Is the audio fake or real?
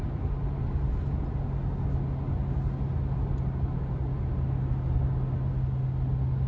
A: real